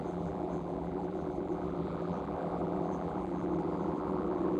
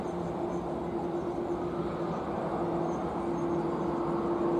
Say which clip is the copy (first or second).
first